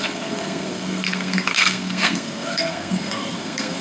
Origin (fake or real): fake